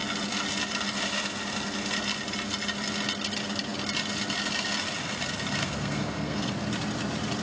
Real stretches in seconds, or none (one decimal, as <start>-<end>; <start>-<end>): 0.0-5.6; 6.5-7.4